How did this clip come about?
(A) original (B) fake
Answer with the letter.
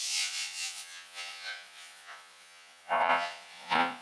B